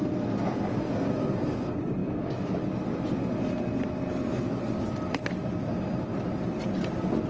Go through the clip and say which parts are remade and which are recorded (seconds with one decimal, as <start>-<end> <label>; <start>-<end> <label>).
0.0-2.0 recorded; 2.0-2.6 remade; 2.6-7.3 recorded